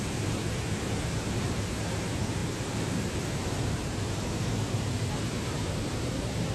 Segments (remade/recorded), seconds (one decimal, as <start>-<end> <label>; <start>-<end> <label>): 0.0-2.4 recorded; 2.4-6.5 remade